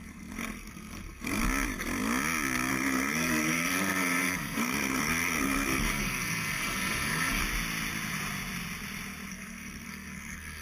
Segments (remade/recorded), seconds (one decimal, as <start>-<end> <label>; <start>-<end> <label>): 0.0-1.4 remade; 1.4-2.7 recorded; 2.7-7.4 remade; 7.4-9.3 recorded; 9.3-10.6 remade